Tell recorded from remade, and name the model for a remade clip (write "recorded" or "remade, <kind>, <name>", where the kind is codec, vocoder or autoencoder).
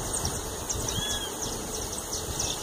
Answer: recorded